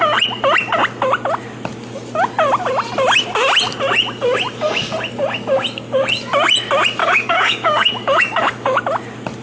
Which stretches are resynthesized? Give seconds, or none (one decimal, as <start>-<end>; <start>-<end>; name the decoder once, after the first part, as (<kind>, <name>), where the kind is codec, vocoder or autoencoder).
7.0-8.8 (codec, DAC)